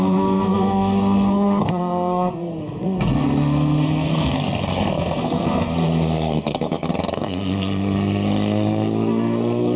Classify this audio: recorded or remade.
remade